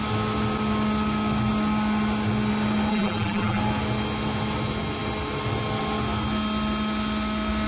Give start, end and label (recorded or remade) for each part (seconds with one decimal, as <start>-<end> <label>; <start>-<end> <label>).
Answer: 0.0-2.9 recorded; 2.9-3.6 remade; 3.6-7.7 recorded